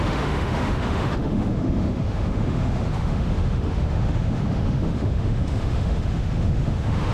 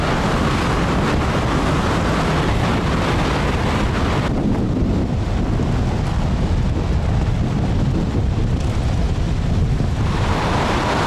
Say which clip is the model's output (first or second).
first